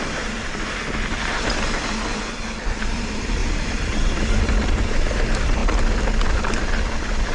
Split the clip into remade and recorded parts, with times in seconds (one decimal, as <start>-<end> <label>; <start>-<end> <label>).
0.0-3.4 recorded; 3.4-4.4 remade; 4.4-7.3 recorded